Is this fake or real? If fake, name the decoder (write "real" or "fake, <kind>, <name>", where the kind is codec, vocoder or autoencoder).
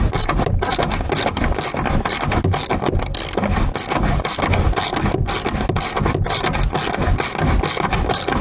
real